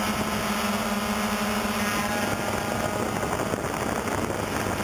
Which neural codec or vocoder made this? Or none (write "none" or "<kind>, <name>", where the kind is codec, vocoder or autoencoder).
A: none